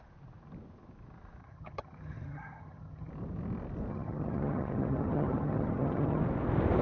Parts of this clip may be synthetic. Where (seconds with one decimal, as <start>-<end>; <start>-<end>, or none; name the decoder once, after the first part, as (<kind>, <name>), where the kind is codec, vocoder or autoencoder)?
1.4-3.1 (vocoder, HiFi-GAN); 3.9-6.2